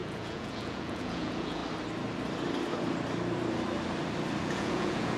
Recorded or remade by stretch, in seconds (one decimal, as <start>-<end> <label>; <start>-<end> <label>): 0.0-1.6 remade; 1.6-4.4 recorded; 4.4-5.2 remade